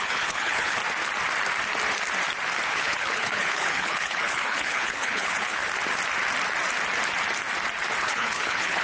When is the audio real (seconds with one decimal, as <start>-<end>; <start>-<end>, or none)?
0.8-2.7; 5.6-8.0